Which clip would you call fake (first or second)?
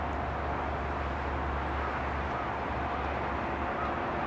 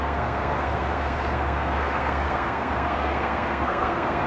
second